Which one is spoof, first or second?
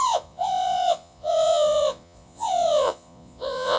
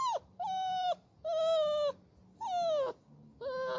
first